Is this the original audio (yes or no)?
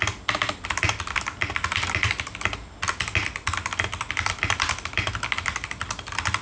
yes